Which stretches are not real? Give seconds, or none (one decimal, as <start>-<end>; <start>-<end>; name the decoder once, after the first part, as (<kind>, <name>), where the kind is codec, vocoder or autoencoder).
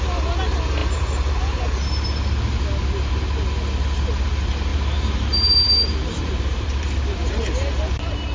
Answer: 0.8-1.6 (vocoder, BigVGAN v2); 4.7-7.9